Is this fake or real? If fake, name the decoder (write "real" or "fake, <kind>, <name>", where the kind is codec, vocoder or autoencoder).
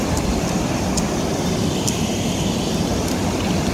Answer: real